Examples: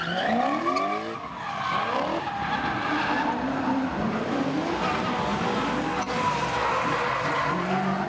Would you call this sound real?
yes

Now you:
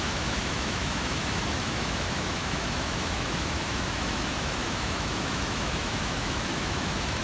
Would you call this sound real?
no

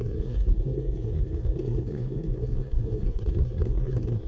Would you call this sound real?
no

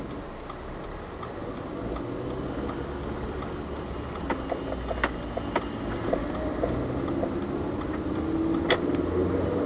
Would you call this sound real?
yes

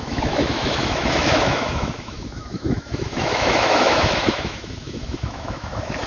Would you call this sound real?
no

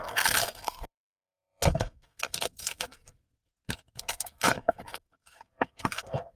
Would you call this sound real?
no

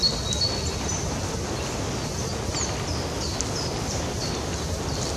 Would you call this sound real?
yes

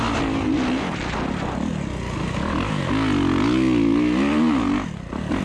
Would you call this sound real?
yes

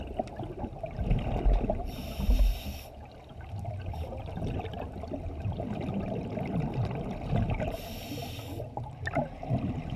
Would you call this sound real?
yes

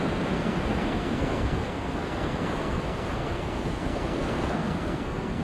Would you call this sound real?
no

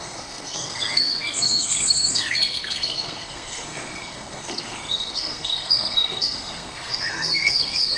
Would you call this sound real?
no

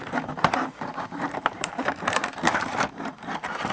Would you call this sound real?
no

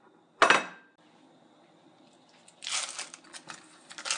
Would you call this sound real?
yes